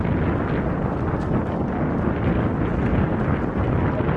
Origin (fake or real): real